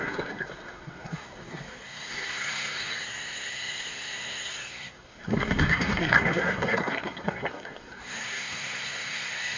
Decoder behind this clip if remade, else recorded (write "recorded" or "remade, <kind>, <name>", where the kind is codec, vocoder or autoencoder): remade, codec, SNAC